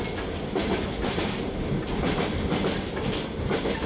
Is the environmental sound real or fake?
real